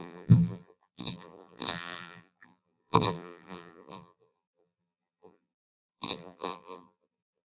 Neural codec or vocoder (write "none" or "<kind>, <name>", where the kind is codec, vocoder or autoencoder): vocoder, BigVGAN v2